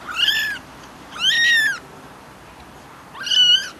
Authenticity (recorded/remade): recorded